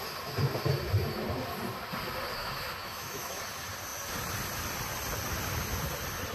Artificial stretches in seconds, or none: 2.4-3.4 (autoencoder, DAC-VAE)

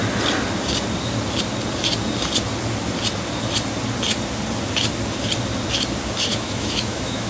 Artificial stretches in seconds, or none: 6.3-7.3 (autoencoder, DAC-VAE)

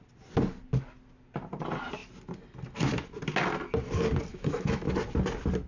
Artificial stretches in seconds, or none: 4.3-4.9 (autoencoder, DAC-VAE)

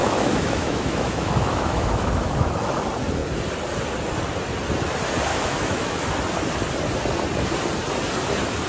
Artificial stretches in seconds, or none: 0.0-2.8 (autoencoder, DAC-VAE); 5.3-6.1

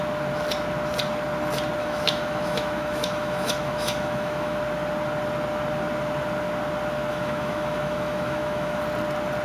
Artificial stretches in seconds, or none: 1.8-4.6 (autoencoder, DAC-VAE); 7.1-8.8

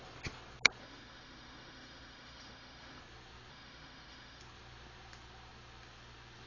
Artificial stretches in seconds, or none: 0.8-3.0 (autoencoder, DAC-VAE); 3.5-4.4

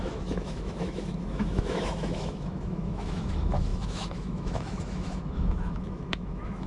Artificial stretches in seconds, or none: 0.0-6.7 (autoencoder, DAC-VAE)